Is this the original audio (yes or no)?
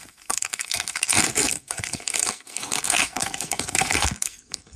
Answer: no